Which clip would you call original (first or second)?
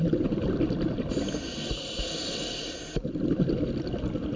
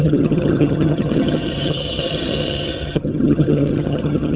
first